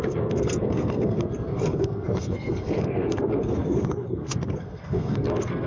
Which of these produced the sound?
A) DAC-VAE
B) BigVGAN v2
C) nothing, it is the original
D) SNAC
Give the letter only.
D